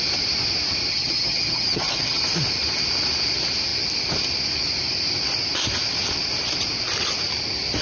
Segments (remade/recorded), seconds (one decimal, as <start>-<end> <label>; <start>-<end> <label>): 0.0-0.9 recorded; 0.9-2.2 remade; 2.2-7.8 recorded

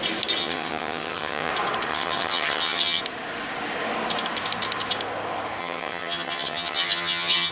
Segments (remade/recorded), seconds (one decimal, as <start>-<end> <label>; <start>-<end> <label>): 0.0-0.4 recorded; 0.4-1.5 remade; 1.5-1.9 recorded; 1.9-3.0 remade; 3.0-5.6 recorded; 5.6-7.5 remade

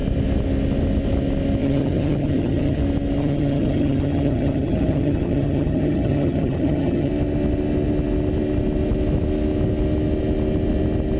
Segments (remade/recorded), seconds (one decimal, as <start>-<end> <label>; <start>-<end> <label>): 0.0-1.6 recorded; 1.6-2.8 remade; 2.8-3.2 recorded; 3.2-7.1 remade; 7.1-11.2 recorded

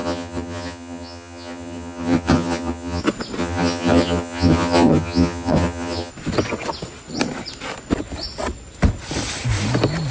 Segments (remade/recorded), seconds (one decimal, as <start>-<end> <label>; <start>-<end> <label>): 0.0-3.0 remade; 3.0-3.4 recorded; 3.4-6.1 remade; 6.1-10.1 recorded

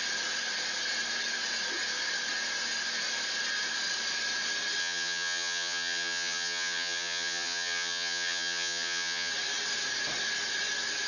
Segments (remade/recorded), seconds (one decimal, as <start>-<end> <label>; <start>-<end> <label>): 0.0-4.8 recorded; 4.8-9.3 remade; 9.3-11.1 recorded

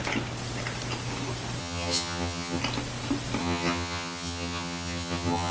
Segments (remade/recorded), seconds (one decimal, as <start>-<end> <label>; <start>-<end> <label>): 0.0-1.6 recorded; 1.6-2.6 remade; 2.6-3.4 recorded; 3.4-5.5 remade

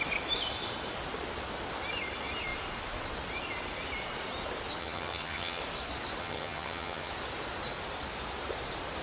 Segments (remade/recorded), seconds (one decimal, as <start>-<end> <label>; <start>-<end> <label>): 0.0-4.8 recorded; 4.8-5.6 remade; 5.6-6.2 recorded; 6.2-7.1 remade; 7.1-9.0 recorded

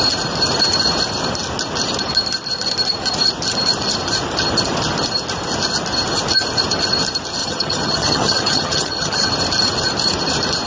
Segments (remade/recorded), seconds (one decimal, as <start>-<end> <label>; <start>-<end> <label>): 0.0-7.4 recorded; 7.4-9.3 remade; 9.3-10.7 recorded